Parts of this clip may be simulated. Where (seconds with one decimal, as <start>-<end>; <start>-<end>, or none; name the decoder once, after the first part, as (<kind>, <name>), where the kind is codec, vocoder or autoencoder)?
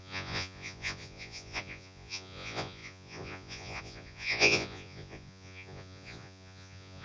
0.0-7.0 (vocoder, Vocos)